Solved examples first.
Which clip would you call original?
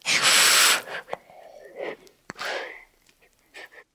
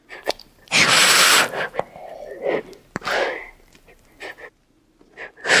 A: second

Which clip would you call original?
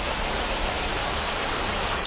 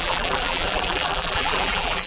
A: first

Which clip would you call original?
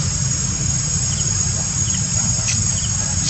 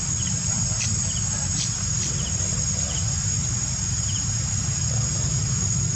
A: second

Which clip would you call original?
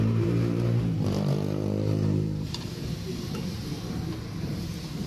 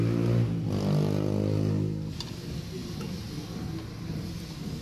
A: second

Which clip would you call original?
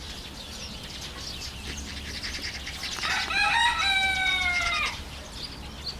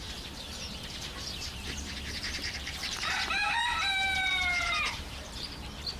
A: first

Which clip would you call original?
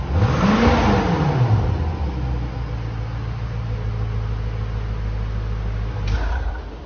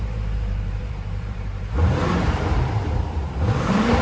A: first